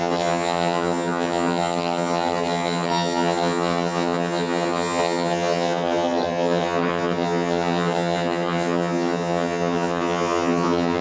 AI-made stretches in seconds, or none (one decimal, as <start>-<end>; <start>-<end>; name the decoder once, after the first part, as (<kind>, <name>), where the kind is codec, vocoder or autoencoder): 0.0-11.0 (vocoder, HiFi-GAN)